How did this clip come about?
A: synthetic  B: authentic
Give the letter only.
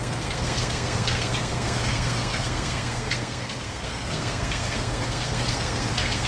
A